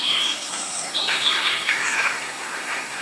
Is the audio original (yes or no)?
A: no